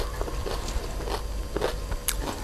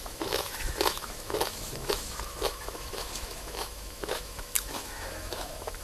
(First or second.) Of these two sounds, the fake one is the second